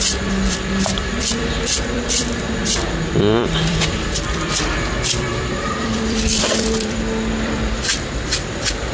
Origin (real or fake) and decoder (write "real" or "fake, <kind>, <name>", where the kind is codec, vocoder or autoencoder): fake, vocoder, BigVGAN v2